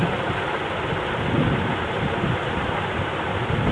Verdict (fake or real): real